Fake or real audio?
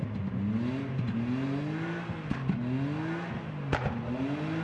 real